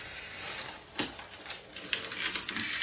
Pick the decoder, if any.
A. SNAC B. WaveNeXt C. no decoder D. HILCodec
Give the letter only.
C